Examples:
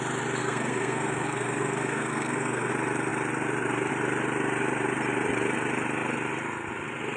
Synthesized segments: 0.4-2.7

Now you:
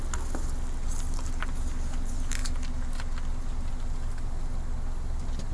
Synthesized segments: none

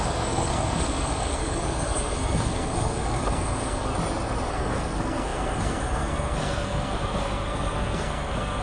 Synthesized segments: 0.0-3.9; 4.5-8.6

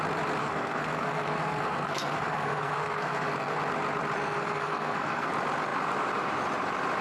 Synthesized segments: 0.4-3.6; 4.2-5.3

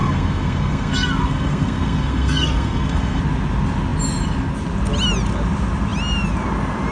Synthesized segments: 0.0-3.2

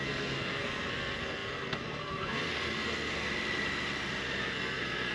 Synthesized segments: 0.0-3.3; 4.4-5.1